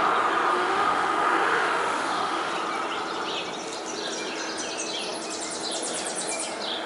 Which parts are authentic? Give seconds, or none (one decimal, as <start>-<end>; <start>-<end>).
0.0-0.5; 2.5-6.9